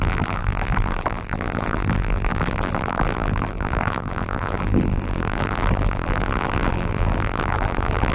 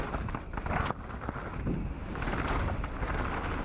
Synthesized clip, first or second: first